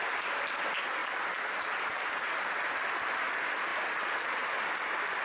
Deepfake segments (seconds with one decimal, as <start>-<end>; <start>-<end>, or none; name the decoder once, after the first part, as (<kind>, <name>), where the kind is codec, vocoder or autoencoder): none